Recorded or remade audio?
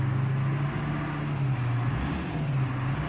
recorded